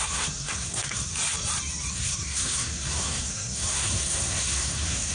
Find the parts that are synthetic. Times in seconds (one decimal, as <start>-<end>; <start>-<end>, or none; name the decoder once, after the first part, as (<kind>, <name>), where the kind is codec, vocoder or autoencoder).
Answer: 0.0-1.1 (codec, SNAC); 1.9-5.1